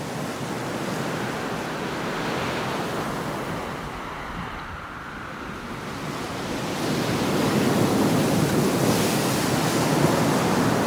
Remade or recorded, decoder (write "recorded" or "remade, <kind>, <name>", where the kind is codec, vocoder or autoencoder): recorded